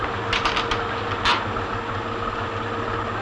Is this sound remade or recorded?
recorded